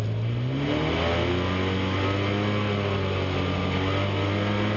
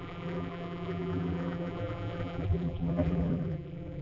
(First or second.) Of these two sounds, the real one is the first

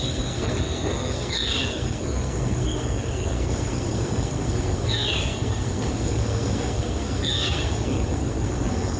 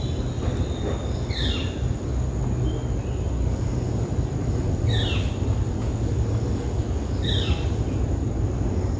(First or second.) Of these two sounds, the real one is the second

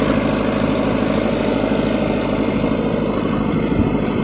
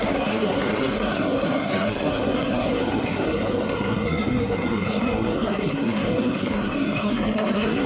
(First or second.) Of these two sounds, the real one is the first